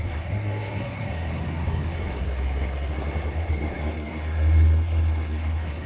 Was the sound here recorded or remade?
remade